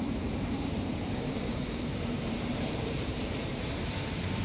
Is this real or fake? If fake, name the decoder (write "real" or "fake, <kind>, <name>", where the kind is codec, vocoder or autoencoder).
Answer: fake, vocoder, BigVGAN v2